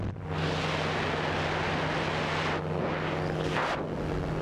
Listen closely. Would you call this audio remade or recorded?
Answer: recorded